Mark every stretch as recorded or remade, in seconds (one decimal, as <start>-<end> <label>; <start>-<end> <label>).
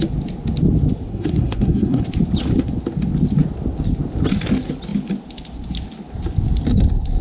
0.0-1.1 recorded; 1.1-2.0 remade; 2.0-7.2 recorded